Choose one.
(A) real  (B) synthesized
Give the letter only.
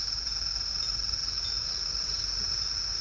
A